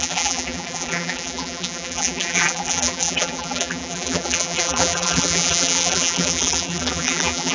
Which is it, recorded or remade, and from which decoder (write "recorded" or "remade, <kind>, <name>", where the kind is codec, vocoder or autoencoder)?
remade, vocoder, BigVGAN v2